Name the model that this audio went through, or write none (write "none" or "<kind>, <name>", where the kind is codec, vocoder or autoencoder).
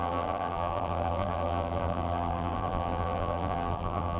vocoder, BigVGAN v2